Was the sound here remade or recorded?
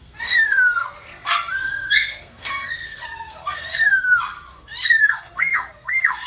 remade